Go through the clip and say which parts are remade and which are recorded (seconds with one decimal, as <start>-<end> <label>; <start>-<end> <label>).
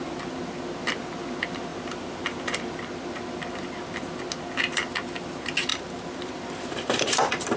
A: 0.0-5.7 recorded; 5.7-7.6 remade